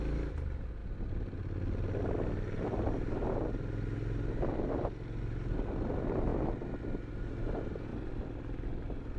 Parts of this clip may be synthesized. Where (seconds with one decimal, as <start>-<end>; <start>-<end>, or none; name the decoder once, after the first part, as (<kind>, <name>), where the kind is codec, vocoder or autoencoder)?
none